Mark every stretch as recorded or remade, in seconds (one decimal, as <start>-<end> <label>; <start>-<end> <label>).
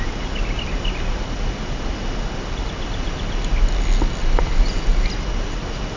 0.0-6.0 recorded